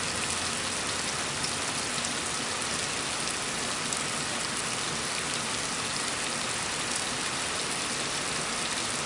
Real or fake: real